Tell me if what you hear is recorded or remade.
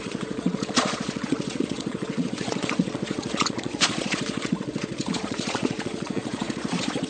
remade